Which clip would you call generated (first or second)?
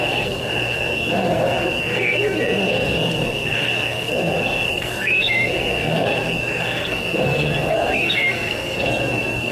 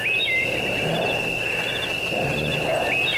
first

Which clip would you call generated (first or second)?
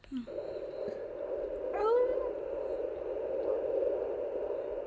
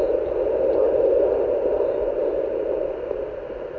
second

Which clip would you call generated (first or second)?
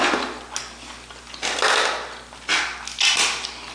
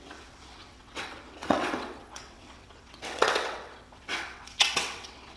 second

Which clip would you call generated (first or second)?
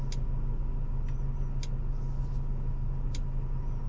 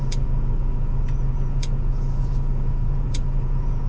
second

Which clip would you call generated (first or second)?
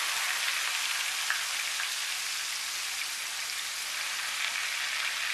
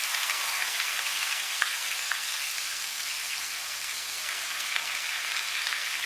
second